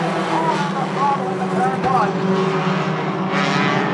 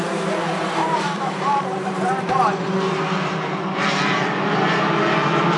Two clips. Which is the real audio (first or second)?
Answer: first